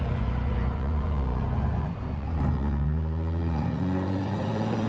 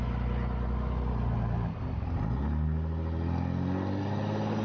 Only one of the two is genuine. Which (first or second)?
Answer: second